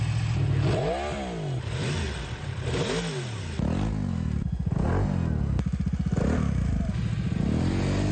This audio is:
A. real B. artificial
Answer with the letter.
A